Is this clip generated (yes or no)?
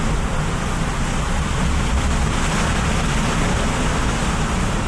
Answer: no